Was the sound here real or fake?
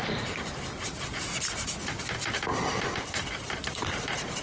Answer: real